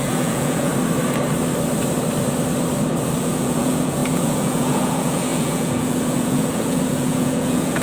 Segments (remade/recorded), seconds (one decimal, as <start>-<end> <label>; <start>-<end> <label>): 0.0-0.7 remade; 0.7-3.2 recorded; 3.2-7.8 remade